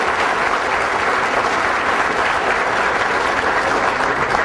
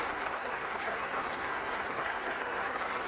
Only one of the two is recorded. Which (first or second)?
first